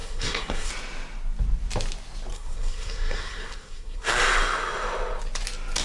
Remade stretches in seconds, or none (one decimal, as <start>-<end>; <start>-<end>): 0.0-0.7; 2.3-4.2